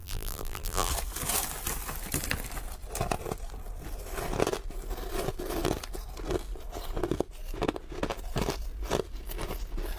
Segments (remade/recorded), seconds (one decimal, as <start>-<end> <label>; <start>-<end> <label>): 0.0-0.9 remade; 0.9-10.0 recorded

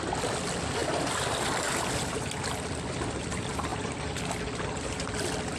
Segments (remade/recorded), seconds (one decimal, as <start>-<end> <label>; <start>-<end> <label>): 0.0-5.6 recorded